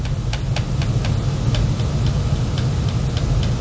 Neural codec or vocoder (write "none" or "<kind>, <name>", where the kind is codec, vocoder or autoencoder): none